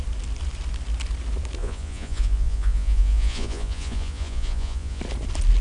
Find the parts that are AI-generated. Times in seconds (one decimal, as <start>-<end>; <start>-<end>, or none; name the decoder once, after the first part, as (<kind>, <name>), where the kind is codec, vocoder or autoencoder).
1.6-5.0 (vocoder, Vocos)